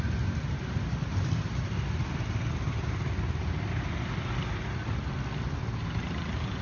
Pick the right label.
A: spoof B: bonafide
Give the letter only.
B